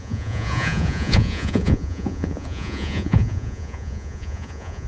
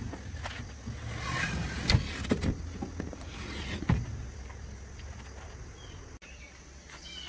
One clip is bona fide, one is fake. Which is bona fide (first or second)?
second